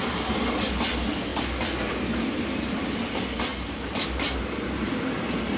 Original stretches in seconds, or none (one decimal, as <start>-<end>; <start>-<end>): 0.0-5.6